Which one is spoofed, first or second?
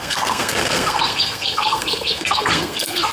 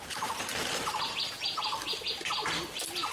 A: first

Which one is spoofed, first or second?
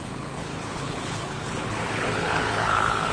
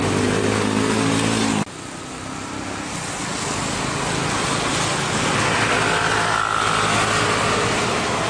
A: first